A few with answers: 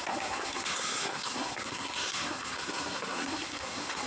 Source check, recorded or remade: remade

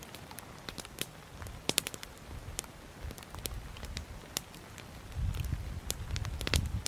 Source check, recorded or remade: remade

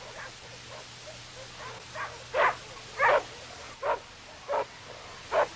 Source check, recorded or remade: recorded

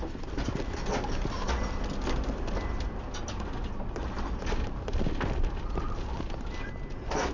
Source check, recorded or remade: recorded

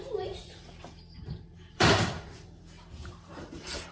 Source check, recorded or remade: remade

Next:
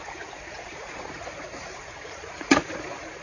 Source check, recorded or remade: remade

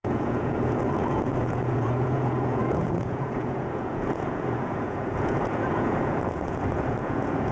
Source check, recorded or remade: remade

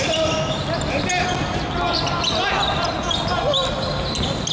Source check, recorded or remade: recorded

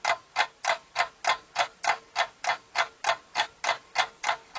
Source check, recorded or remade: recorded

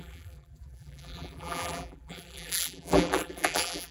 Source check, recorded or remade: remade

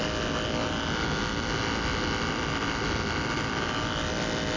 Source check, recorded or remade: recorded